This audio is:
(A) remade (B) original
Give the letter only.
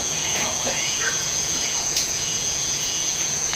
A